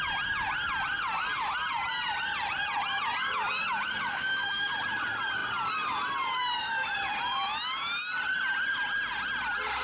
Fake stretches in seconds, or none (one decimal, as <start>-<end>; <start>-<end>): 4.1-4.7